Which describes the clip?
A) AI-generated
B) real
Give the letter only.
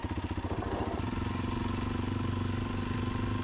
B